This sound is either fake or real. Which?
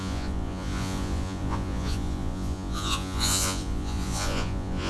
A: fake